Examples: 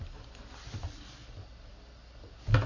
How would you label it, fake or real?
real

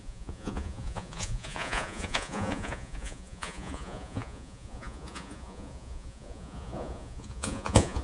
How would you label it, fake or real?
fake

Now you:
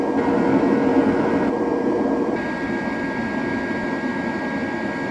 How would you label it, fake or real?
real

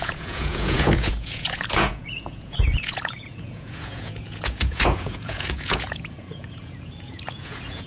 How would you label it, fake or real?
fake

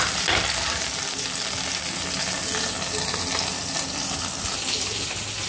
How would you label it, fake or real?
real